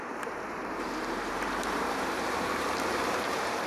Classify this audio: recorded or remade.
remade